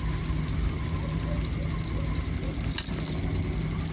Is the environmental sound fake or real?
real